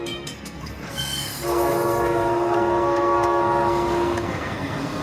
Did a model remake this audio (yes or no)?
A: yes